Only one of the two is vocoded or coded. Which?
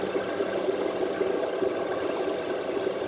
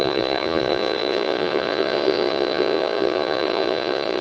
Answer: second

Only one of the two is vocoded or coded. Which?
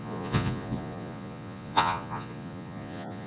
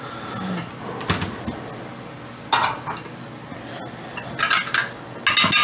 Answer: first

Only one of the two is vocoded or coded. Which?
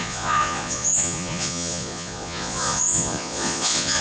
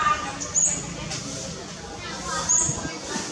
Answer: first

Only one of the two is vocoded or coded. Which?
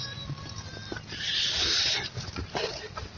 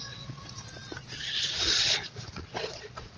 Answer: second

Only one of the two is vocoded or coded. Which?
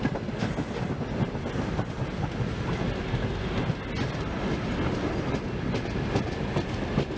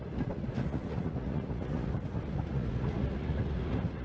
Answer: second